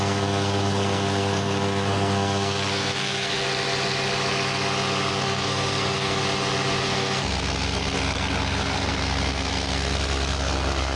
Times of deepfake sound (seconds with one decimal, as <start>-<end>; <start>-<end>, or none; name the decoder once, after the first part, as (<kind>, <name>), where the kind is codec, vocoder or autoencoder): 0.0-3.3 (codec, SNAC); 5.1-6.2; 6.8-11.0